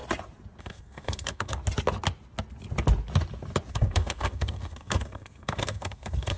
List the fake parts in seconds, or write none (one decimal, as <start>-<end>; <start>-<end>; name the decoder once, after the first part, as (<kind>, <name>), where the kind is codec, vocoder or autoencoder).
0.6-1.6 (codec, SNAC); 3.7-6.4